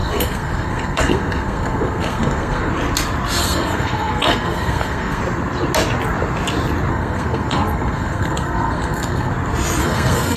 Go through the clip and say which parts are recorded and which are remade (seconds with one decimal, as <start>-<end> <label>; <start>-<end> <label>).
0.0-2.7 remade; 2.7-3.4 recorded; 3.4-5.2 remade; 5.2-6.9 recorded; 6.9-9.3 remade; 9.3-9.8 recorded; 9.8-10.4 remade